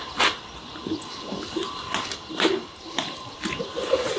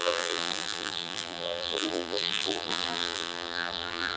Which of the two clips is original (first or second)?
first